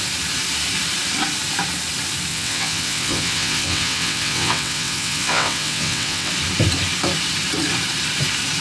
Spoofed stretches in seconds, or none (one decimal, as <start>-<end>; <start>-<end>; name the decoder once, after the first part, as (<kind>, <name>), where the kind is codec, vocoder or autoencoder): 2.3-6.3 (vocoder, WaveNeXt)